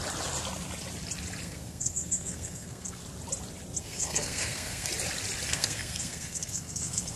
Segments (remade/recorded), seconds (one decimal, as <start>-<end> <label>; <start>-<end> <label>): 0.0-1.4 recorded; 1.4-3.0 remade; 3.0-3.8 recorded; 3.8-4.9 remade; 4.9-5.5 recorded; 5.5-7.2 remade